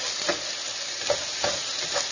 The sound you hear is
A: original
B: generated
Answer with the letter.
A